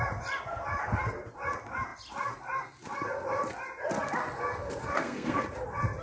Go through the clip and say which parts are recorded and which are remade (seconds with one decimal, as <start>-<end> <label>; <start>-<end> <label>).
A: 0.0-4.8 recorded; 4.8-5.4 remade; 5.4-6.0 recorded